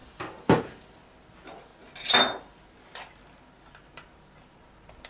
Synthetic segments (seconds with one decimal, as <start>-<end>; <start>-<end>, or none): none